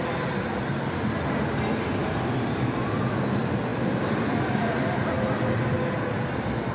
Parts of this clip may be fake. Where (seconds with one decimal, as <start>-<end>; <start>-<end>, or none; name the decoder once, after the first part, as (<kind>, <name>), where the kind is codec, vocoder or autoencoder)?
none